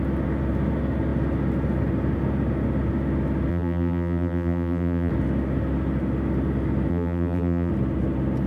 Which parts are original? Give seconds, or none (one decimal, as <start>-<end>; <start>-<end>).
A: 0.0-3.5; 5.1-6.9; 7.7-8.5

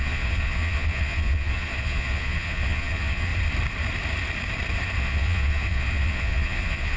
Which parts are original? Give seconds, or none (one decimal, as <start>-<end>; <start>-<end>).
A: 3.3-5.0

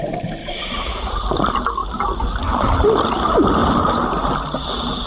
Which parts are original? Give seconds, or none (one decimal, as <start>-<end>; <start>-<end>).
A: 0.0-0.4; 1.1-5.1

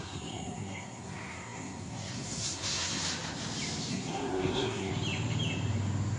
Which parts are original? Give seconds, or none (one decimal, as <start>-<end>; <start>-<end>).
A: 3.0-3.9; 4.9-6.2

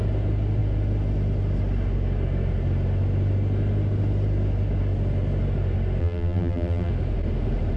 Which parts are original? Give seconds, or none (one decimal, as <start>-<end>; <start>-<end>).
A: 0.0-6.0; 6.9-7.8

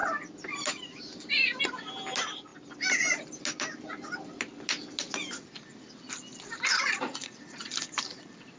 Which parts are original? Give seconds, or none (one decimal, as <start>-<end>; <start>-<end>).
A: 0.0-6.7; 7.4-8.6